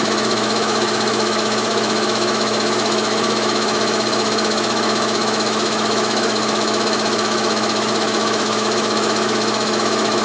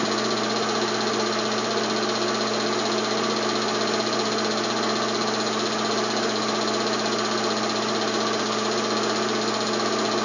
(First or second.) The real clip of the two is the second